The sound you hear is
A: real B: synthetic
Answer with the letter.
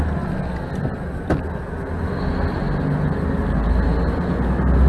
A